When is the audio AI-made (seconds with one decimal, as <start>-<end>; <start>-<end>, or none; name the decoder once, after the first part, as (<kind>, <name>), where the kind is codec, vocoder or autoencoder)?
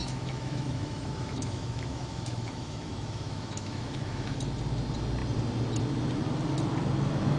0.0-4.4 (autoencoder, DAC-VAE)